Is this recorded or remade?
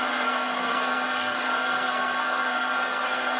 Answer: remade